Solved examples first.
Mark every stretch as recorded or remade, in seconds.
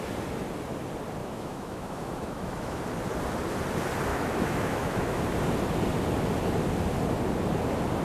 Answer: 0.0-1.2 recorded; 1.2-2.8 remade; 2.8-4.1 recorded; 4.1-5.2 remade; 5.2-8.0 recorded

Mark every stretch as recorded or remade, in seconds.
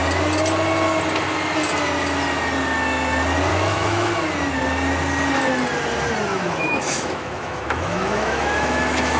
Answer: 0.0-3.5 recorded; 3.5-4.1 remade; 4.1-6.3 recorded; 6.3-9.2 remade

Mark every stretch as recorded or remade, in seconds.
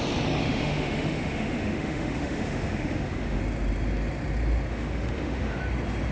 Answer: 0.0-0.4 recorded; 0.4-3.4 remade; 3.4-4.7 recorded; 4.7-5.6 remade; 5.6-6.1 recorded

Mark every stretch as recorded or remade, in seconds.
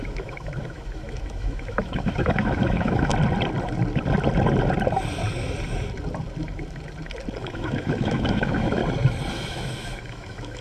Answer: 0.0-3.1 remade; 3.1-7.4 recorded; 7.4-8.8 remade; 8.8-9.3 recorded; 9.3-10.6 remade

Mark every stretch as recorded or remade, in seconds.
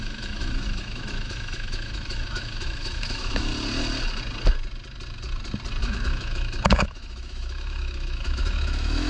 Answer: 0.0-3.5 remade; 3.5-5.8 recorded; 5.8-9.1 remade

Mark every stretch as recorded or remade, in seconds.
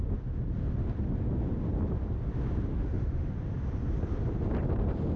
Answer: 0.0-2.7 recorded; 2.7-3.3 remade; 3.3-5.2 recorded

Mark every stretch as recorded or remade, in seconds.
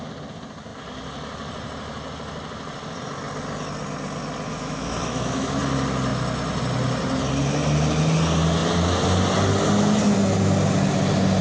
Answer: 0.0-4.5 recorded; 4.5-5.6 remade; 5.6-11.4 recorded